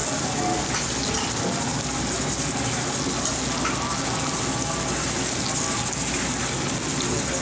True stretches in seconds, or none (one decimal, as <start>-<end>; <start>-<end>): 0.0-7.4